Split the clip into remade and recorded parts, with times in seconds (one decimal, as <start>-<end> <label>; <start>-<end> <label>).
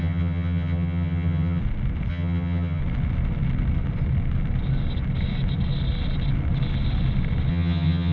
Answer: 0.0-1.6 remade; 1.6-2.1 recorded; 2.1-2.8 remade; 2.8-7.5 recorded; 7.5-8.1 remade